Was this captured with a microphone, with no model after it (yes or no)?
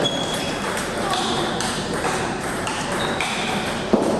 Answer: no